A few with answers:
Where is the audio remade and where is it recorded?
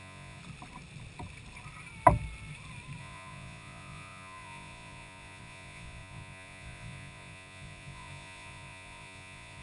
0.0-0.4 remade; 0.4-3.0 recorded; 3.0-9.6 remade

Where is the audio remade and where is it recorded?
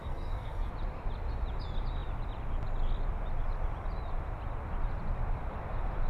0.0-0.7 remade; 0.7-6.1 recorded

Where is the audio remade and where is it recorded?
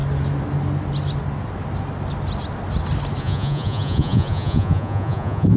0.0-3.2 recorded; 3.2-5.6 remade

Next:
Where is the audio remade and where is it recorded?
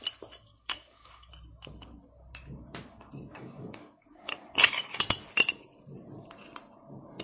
0.0-0.5 recorded; 0.5-1.3 remade; 1.3-3.3 recorded; 3.3-5.0 remade; 5.0-7.2 recorded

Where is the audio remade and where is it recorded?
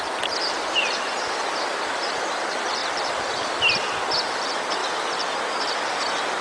0.0-6.4 recorded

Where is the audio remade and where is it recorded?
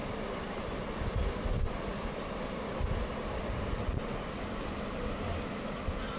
0.0-0.6 remade; 0.6-1.9 recorded; 1.9-5.6 remade; 5.6-6.2 recorded